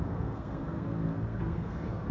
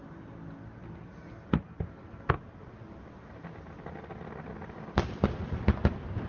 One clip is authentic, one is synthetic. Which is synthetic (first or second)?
first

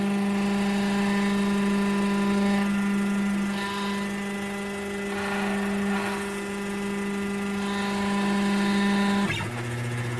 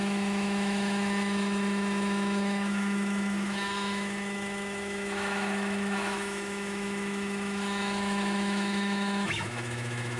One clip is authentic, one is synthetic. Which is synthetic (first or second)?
second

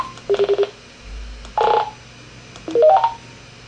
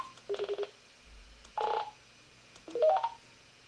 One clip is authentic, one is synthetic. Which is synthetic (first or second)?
second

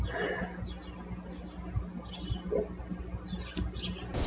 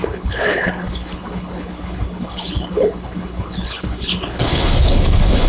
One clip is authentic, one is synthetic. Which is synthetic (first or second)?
second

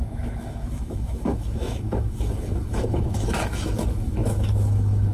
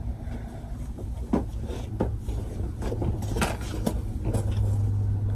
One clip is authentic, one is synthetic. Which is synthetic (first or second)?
first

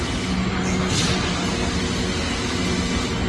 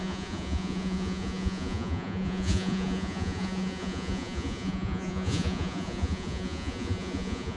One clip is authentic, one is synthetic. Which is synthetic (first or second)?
second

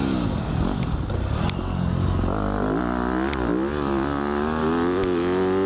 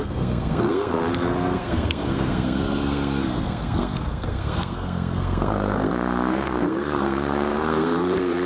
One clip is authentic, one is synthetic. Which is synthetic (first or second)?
second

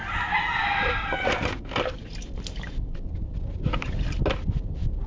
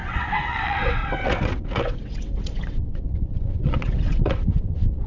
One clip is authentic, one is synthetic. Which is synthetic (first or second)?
second